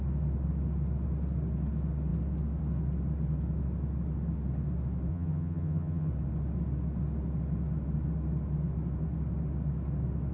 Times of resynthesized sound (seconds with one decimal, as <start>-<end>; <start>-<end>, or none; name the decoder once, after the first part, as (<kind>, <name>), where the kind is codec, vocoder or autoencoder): 5.1-6.1 (vocoder, HiFi-GAN)